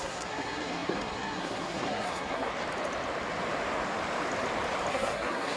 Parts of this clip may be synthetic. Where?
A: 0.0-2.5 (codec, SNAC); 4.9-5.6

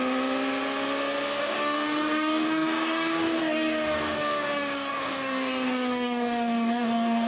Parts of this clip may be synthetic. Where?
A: 1.4-7.3 (codec, DAC)

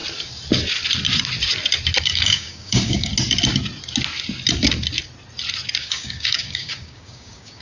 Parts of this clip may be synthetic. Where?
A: 2.0-3.1 (codec, DAC); 5.8-7.6

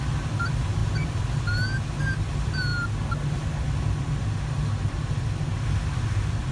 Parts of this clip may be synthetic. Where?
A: none

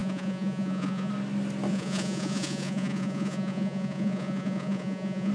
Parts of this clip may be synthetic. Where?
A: 0.0-1.1 (vocoder, Vocos); 1.7-5.3

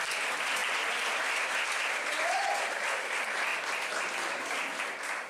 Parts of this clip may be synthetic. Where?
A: none